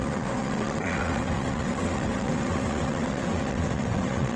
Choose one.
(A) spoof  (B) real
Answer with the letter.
A